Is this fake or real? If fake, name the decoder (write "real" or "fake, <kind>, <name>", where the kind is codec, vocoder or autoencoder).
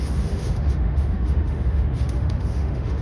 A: fake, autoencoder, DAC-VAE